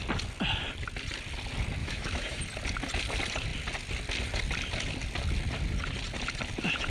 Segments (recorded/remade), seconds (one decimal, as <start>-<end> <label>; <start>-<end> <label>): 0.0-1.8 recorded; 1.8-2.4 remade; 2.4-6.9 recorded